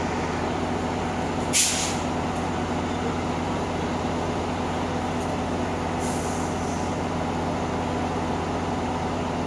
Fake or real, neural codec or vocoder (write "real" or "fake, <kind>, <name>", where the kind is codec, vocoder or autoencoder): real